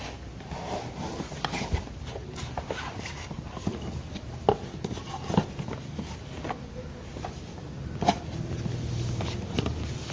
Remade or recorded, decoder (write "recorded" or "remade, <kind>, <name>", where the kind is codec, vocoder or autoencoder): recorded